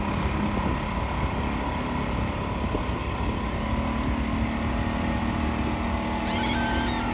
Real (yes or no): yes